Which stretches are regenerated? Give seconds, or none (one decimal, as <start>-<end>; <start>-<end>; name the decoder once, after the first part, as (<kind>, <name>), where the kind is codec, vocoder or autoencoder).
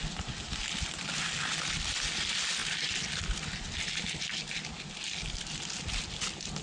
none